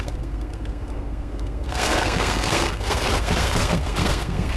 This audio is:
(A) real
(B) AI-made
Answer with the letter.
B